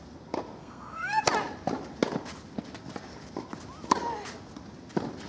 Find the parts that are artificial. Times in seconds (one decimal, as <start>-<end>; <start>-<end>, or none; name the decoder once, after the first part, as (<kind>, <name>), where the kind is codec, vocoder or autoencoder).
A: 0.6-1.2 (codec, SNAC)